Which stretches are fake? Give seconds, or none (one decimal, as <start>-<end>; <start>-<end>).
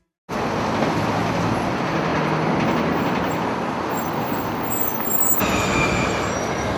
none